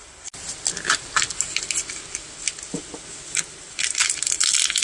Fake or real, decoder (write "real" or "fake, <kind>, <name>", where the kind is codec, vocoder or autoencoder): real